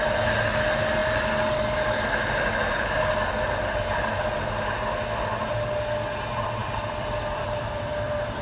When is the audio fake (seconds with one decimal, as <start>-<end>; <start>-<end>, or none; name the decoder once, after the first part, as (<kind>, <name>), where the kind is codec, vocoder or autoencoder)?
6.6-8.4 (vocoder, BigVGAN v2)